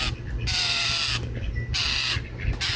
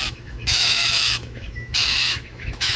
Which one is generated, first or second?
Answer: second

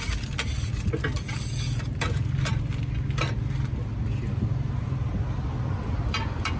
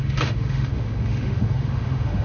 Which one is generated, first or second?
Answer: second